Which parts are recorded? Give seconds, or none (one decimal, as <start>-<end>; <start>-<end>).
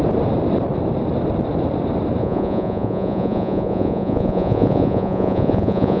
0.0-2.2